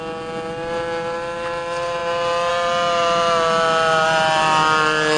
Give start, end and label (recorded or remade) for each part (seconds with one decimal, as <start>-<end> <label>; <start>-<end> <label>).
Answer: 0.0-5.2 recorded